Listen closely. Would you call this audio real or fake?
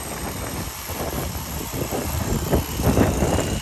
real